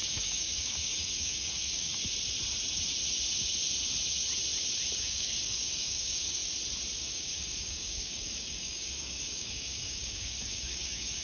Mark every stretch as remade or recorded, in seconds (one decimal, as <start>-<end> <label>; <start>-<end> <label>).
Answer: 0.0-2.0 remade; 2.0-4.9 recorded; 4.9-6.4 remade; 6.4-7.0 recorded; 7.0-11.2 remade